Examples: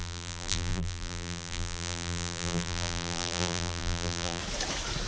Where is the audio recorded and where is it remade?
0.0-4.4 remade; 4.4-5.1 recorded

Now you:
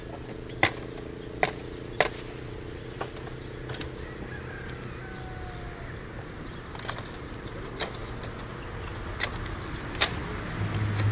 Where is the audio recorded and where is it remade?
0.0-11.1 recorded